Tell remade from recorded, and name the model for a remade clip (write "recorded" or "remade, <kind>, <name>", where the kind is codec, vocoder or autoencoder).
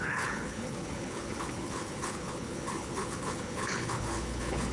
remade, codec, HILCodec